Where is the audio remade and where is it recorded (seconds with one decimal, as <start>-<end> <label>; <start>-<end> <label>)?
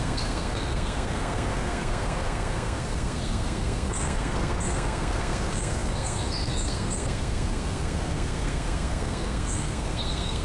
0.0-10.4 remade